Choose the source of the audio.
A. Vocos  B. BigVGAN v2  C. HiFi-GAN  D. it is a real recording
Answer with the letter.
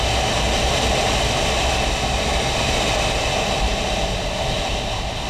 D